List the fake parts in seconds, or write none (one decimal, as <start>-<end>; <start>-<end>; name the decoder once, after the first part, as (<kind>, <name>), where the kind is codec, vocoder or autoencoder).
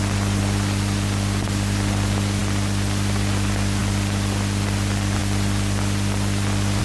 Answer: none